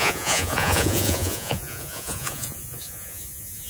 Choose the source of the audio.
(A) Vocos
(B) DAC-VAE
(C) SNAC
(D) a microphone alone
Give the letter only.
A